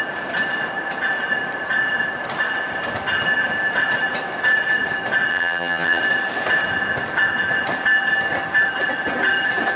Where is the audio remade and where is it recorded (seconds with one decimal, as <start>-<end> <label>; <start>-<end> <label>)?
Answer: 0.0-5.3 recorded; 5.3-6.0 remade; 6.0-9.8 recorded